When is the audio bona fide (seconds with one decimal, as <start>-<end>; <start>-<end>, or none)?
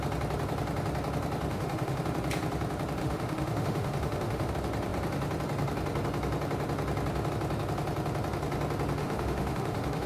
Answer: 0.0-1.5; 2.0-3.0; 4.5-9.0